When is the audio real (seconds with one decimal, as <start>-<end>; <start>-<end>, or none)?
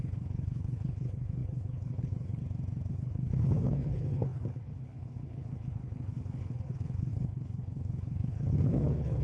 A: 2.4-2.9